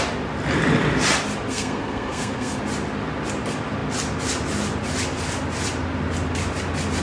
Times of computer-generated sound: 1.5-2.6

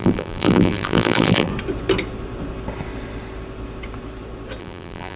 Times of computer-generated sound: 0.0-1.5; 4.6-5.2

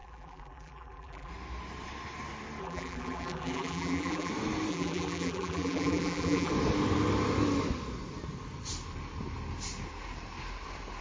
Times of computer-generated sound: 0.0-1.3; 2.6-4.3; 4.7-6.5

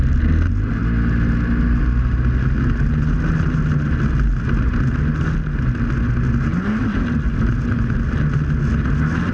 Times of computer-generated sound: none

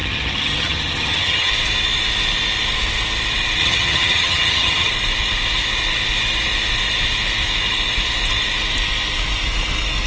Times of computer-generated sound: 0.0-1.5; 3.6-4.9

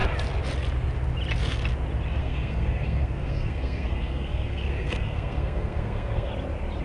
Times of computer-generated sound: 2.2-6.3